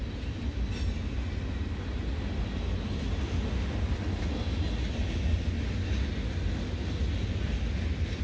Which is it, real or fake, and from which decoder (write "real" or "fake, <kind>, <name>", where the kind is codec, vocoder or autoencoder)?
real